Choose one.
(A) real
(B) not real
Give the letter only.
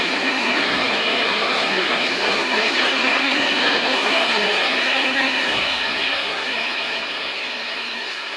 B